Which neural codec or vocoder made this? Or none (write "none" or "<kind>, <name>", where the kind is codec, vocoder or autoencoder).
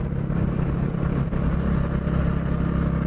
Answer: none